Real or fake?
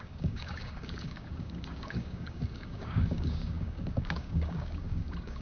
fake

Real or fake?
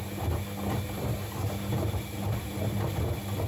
real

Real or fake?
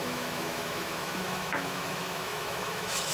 fake